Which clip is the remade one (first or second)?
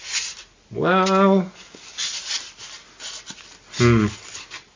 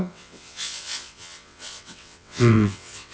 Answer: second